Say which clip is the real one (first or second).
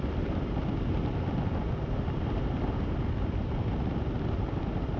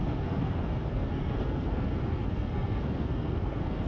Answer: first